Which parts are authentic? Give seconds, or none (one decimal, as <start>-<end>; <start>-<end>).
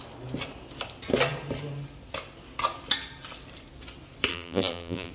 0.0-4.3